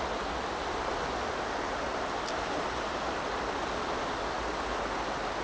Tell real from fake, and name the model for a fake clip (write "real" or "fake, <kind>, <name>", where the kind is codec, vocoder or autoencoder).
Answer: real